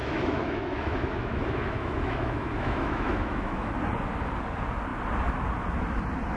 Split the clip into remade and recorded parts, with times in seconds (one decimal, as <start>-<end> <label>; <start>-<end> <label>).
0.0-3.7 remade; 3.7-6.4 recorded

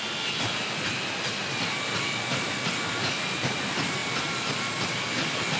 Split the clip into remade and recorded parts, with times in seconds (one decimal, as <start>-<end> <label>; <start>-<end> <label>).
0.0-5.6 recorded

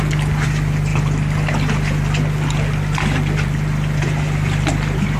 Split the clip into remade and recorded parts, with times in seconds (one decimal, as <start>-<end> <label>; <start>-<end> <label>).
0.0-5.2 recorded